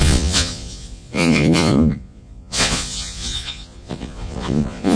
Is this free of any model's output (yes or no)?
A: no